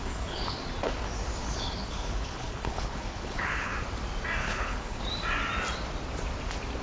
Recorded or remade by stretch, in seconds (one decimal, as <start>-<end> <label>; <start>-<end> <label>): 0.0-0.6 remade; 0.6-1.4 recorded; 1.4-3.7 remade; 3.7-4.4 recorded; 4.4-5.0 remade; 5.0-6.8 recorded